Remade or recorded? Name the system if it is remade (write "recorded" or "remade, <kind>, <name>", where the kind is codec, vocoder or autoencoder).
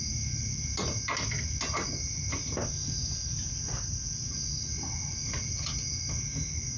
recorded